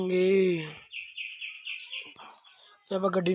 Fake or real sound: real